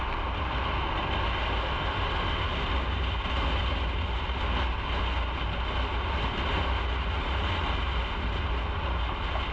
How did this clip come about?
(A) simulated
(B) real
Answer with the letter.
B